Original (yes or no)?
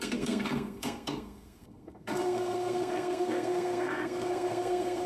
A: no